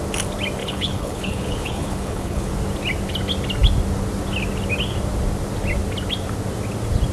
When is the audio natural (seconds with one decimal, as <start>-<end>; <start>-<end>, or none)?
0.0-0.6; 2.5-7.1